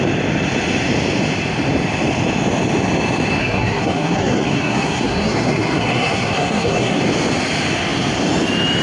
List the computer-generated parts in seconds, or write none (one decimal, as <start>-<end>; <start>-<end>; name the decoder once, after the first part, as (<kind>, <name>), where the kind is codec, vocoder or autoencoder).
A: 3.4-7.0 (codec, SNAC)